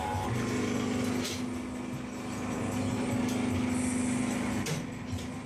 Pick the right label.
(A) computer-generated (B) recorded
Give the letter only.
B